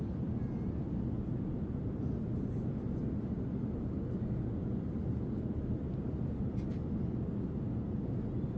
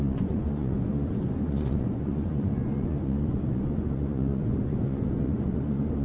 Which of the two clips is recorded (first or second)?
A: first